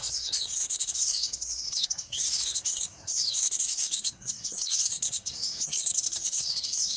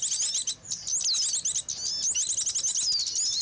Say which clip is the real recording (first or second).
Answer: second